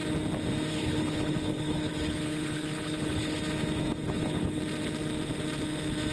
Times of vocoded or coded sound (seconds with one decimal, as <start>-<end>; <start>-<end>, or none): 0.7-3.4; 4.0-4.6